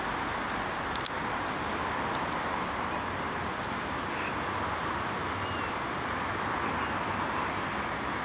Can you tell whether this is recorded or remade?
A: recorded